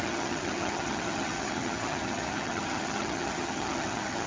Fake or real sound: fake